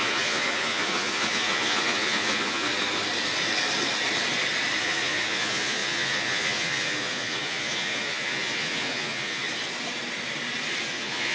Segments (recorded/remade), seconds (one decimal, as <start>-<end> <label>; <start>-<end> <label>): 0.0-2.7 remade; 2.7-4.8 recorded; 4.8-9.4 remade; 9.4-10.9 recorded; 10.9-11.3 remade